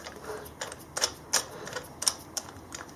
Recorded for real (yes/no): yes